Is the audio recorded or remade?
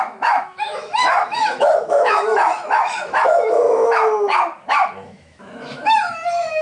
remade